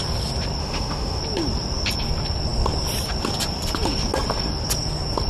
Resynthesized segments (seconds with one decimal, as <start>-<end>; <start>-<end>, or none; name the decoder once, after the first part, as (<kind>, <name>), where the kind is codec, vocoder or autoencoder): 0.6-1.2 (autoencoder, DAC-VAE)